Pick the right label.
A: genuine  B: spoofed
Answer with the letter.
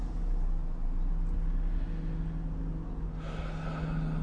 A